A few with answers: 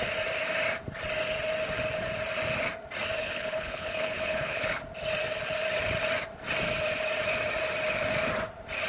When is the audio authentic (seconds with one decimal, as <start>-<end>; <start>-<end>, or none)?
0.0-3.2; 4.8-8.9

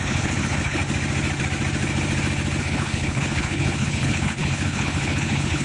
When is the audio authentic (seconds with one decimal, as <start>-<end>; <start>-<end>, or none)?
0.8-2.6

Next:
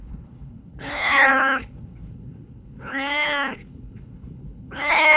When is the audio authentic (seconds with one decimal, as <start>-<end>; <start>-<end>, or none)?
none